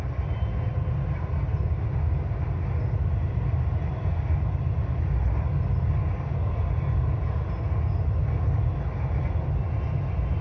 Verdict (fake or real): real